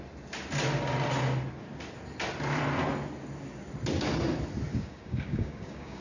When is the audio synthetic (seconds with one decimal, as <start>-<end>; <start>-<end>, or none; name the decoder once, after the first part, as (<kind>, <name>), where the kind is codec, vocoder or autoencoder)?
4.7-6.0 (codec, DAC)